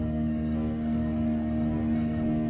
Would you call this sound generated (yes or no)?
yes